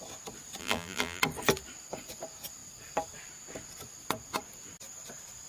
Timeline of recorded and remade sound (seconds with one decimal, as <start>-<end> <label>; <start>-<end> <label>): 0.0-0.6 recorded; 0.6-1.2 remade; 1.2-5.5 recorded